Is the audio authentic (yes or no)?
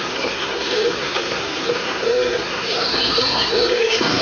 no